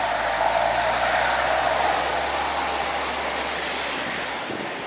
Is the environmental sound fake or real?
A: real